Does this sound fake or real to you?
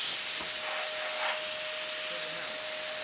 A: real